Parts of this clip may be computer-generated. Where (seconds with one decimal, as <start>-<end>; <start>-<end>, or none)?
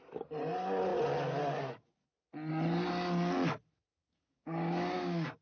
3.9-5.4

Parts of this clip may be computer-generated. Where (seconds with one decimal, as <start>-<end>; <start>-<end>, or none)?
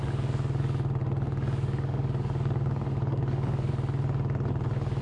1.0-3.7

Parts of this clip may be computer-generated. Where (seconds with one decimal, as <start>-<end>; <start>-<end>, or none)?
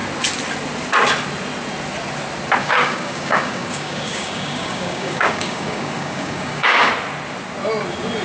2.6-6.9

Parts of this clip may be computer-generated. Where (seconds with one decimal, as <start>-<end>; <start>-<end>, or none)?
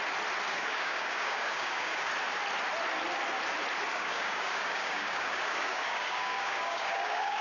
0.5-2.1; 3.9-7.4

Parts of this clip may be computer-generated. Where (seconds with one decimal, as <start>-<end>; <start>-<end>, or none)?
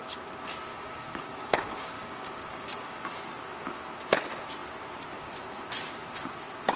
0.7-3.0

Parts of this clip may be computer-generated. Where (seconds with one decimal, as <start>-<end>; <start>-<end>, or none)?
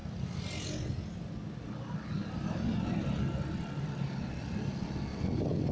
none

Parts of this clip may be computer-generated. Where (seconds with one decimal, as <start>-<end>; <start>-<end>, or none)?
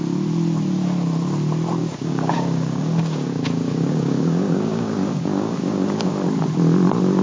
1.8-6.1